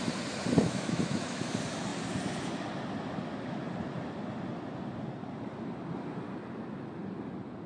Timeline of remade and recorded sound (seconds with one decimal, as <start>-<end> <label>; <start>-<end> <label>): 0.0-0.6 recorded; 0.6-1.5 remade; 1.5-7.7 recorded